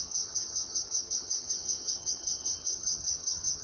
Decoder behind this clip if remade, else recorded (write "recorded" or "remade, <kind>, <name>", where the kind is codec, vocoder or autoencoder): remade, vocoder, HiFi-GAN